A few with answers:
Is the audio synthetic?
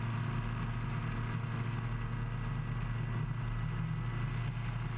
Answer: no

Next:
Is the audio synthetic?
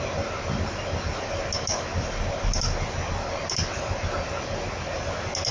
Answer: no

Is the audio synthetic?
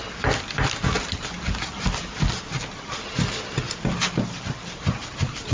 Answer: no